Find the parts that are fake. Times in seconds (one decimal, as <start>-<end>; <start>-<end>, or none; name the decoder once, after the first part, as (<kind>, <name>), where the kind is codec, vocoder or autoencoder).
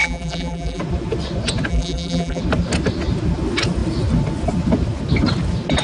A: 0.0-0.8 (vocoder, BigVGAN v2); 1.7-2.4